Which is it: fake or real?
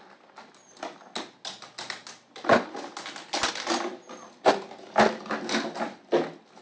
real